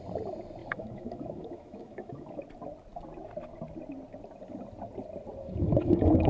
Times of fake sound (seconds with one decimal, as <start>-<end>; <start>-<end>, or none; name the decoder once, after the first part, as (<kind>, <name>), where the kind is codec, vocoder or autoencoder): 0.6-2.4 (autoencoder, DAC-VAE); 5.4-6.3